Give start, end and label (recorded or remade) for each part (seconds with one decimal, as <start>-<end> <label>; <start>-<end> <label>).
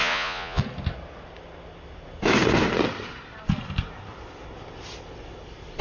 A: 0.0-0.6 remade; 0.6-5.8 recorded